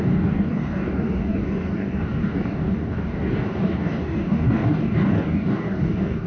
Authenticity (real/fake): fake